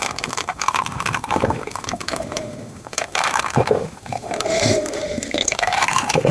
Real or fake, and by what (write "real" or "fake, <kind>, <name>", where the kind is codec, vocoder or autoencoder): fake, autoencoder, DAC-VAE